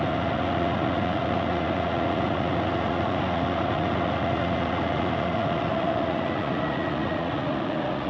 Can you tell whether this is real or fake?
fake